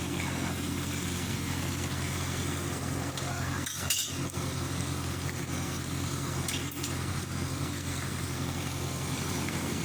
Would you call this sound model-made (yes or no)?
yes